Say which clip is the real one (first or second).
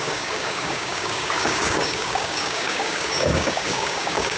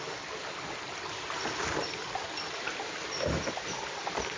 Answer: second